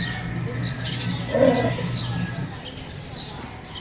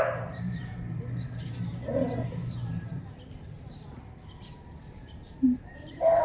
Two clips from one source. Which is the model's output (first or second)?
second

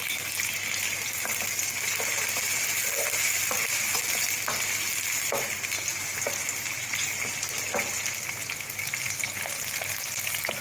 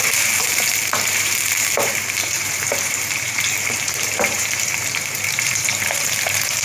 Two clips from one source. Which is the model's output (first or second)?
second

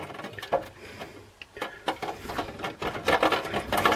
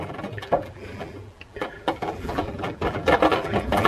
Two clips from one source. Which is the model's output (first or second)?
second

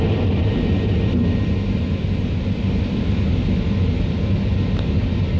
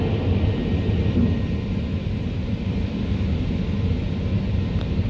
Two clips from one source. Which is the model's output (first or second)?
second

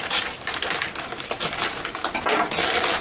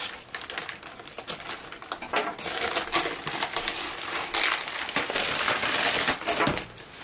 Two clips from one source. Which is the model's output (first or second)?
first